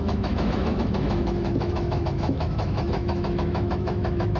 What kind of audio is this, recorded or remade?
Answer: remade